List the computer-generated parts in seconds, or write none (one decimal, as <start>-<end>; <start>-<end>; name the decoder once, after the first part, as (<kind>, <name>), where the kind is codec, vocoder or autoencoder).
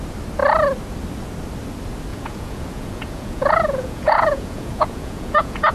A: 2.1-5.7 (vocoder, Vocos)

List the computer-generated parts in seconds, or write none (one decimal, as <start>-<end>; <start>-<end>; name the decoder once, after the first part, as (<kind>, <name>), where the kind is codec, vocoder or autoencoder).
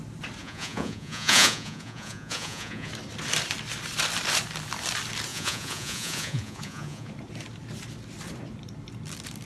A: 0.4-2.9 (vocoder, Vocos); 5.3-7.1